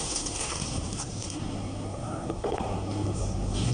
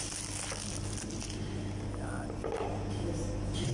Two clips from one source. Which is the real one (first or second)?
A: second